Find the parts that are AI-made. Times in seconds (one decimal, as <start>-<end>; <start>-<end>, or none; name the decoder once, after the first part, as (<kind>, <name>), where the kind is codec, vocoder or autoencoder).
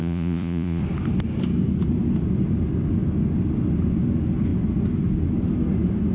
0.0-0.8 (vocoder, Vocos)